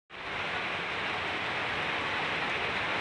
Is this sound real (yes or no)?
yes